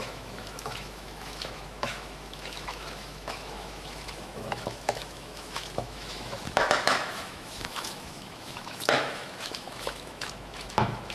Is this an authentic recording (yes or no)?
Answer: no